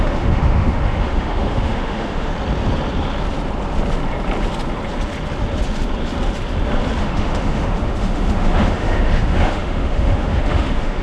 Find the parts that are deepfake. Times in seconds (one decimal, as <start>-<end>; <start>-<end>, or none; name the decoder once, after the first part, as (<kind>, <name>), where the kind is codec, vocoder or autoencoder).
0.0-2.3 (autoencoder, DAC-VAE); 7.0-11.0